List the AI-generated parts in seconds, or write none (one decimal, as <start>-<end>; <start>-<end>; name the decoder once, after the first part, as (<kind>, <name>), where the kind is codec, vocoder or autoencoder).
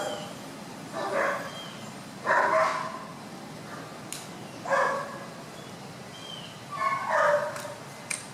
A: none